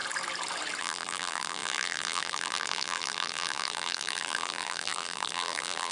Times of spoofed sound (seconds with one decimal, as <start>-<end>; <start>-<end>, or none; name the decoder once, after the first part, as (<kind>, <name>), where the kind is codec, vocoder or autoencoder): 0.8-5.9 (vocoder, BigVGAN v2)